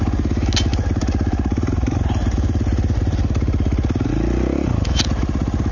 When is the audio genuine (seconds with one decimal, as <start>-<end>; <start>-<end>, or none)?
0.0-0.7; 4.1-5.7